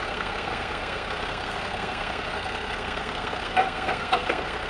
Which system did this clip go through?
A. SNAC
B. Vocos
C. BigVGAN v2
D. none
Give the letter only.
A